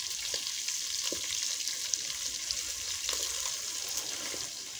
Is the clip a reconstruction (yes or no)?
no